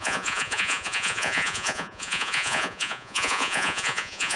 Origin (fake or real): fake